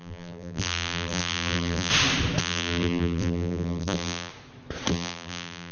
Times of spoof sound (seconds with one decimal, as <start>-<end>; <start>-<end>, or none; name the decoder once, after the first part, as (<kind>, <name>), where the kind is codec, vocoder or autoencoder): 0.0-1.9 (vocoder, BigVGAN v2); 2.4-4.3; 4.9-5.7